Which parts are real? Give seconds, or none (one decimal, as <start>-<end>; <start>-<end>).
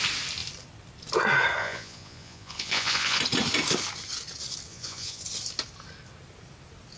0.0-1.6; 3.2-4.7; 5.2-7.0